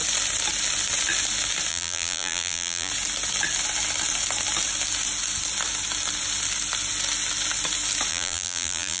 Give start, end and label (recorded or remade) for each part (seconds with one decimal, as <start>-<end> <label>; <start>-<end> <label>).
0.0-1.7 recorded; 1.7-2.9 remade; 2.9-8.1 recorded; 8.1-9.0 remade